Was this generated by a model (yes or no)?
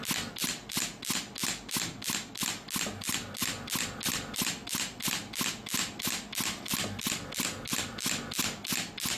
no